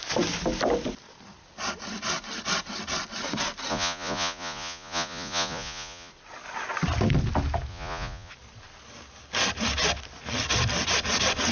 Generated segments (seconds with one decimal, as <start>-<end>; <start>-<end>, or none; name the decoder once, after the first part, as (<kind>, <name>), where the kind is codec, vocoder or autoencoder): 3.7-6.1 (vocoder, Vocos); 7.7-8.3